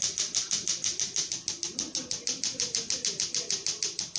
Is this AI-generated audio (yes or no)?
no